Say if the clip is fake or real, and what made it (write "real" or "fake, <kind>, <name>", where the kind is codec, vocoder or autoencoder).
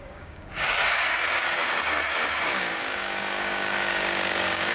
fake, codec, DAC